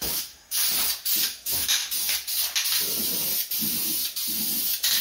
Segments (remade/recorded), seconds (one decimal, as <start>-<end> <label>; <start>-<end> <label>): 0.0-0.6 remade; 0.6-1.2 recorded; 1.2-1.8 remade; 1.8-5.0 recorded

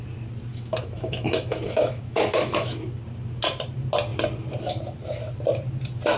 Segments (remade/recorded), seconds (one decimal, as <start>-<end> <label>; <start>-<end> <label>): 0.0-0.5 recorded; 0.5-2.8 remade; 2.8-6.2 recorded